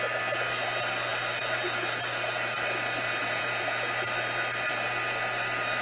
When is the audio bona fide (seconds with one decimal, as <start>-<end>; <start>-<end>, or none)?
0.0-3.2; 3.9-5.8

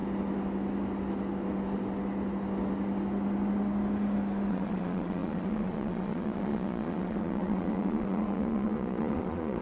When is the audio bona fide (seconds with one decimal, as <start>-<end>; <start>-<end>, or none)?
0.0-4.5

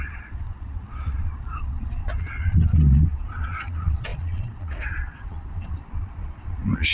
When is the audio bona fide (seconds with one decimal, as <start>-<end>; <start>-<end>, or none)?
none

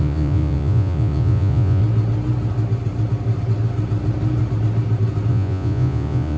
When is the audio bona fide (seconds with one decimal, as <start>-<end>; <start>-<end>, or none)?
1.8-5.3

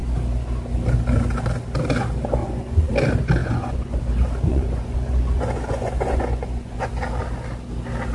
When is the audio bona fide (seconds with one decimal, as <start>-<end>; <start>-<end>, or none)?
0.0-2.4; 2.9-3.4; 4.0-4.5; 6.9-8.1

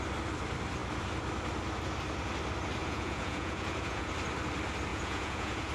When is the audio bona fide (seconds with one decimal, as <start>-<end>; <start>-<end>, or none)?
0.0-2.8; 4.1-4.9